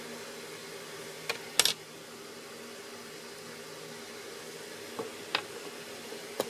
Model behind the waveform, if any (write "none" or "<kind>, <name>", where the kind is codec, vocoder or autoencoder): none